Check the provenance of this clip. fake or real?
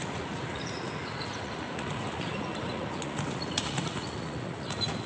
fake